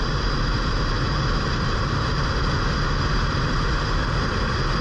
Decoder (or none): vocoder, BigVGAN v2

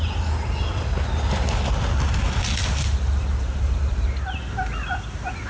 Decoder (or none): none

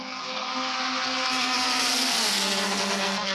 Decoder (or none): codec, SNAC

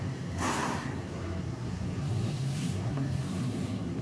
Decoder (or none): codec, SNAC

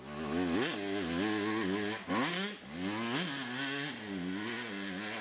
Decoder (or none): none